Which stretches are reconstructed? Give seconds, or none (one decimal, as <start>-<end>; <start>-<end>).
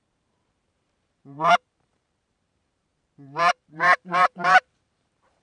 0.0-2.9; 3.5-5.4